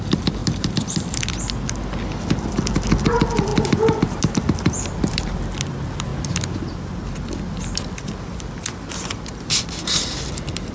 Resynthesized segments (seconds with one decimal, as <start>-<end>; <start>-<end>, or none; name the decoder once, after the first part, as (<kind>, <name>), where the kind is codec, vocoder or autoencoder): 0.4-1.2 (vocoder, BigVGAN v2); 3.5-5.4